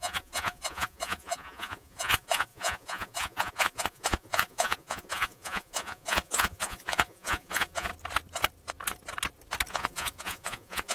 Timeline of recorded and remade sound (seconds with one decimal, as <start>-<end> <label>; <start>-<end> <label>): 0.0-7.9 remade; 7.9-9.7 recorded; 9.7-10.9 remade